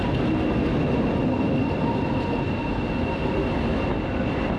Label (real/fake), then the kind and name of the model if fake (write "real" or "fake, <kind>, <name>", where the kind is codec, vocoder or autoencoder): real